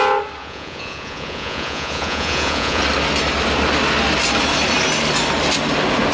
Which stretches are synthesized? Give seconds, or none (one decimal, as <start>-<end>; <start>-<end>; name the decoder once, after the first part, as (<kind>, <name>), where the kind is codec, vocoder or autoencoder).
0.4-2.8 (vocoder, Vocos)

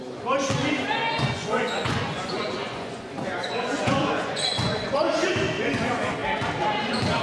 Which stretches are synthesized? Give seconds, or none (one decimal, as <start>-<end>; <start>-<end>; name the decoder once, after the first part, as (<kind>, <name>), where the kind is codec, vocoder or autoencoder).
1.0-5.3 (vocoder, Vocos)

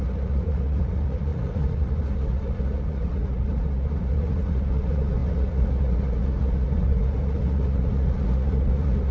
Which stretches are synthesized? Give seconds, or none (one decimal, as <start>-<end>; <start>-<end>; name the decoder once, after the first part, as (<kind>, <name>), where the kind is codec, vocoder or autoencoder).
0.0-9.1 (vocoder, Vocos)

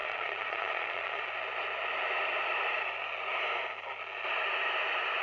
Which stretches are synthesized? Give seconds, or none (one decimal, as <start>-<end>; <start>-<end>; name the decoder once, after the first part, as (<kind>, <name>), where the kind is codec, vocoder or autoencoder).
0.0-1.3 (vocoder, Vocos)

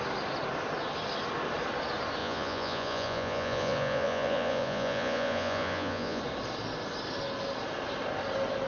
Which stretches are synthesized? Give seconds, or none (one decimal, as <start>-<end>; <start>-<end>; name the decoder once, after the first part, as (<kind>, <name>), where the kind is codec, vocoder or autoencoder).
2.2-6.2 (vocoder, Vocos)

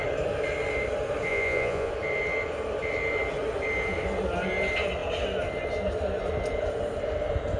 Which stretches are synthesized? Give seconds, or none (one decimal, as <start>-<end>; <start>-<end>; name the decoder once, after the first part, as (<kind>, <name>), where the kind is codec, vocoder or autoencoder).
1.3-1.9 (vocoder, Vocos)

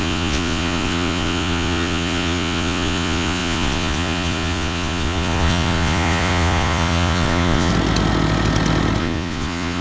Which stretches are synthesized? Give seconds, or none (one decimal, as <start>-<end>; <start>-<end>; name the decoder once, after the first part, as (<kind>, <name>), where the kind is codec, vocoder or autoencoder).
0.0-7.7 (vocoder, Vocos); 9.0-9.8

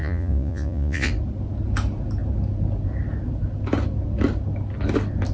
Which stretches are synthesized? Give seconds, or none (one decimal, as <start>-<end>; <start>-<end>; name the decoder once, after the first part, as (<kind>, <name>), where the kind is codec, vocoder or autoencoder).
0.0-1.1 (vocoder, Vocos)